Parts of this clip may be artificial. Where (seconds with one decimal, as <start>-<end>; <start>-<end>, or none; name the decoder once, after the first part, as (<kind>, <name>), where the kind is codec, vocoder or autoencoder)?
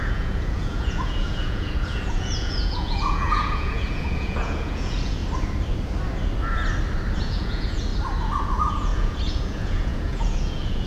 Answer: 0.0-5.2 (vocoder, Vocos); 7.2-7.9; 8.4-10.9